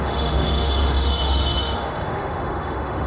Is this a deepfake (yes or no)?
yes